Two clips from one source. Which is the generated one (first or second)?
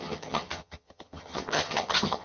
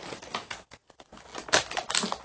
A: first